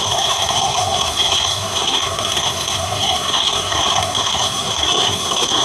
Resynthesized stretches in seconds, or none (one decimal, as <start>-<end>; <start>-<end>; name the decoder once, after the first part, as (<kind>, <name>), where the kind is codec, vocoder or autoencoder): 0.0-5.6 (codec, SNAC)